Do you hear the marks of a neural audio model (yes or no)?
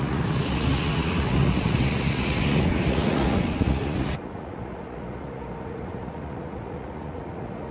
yes